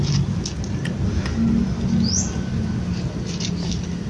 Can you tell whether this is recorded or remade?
recorded